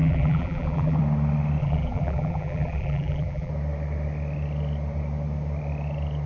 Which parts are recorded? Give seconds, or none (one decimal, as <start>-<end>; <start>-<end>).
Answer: 1.0-1.6; 3.5-6.3